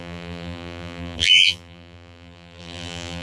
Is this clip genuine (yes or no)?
no